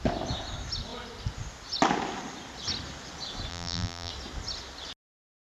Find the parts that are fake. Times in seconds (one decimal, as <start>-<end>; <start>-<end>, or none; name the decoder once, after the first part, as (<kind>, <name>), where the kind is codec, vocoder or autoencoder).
3.5-4.1 (vocoder, BigVGAN v2)